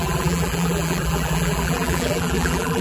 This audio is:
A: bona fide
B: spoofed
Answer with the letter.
B